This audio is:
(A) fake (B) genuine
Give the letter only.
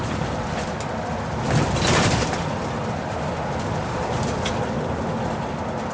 B